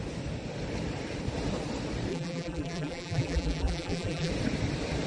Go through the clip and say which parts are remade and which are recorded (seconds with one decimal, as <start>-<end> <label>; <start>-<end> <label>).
0.0-2.1 recorded; 2.1-4.3 remade; 4.3-5.1 recorded